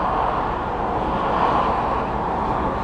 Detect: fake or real real